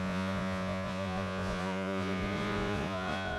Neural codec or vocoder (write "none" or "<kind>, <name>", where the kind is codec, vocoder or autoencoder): vocoder, Vocos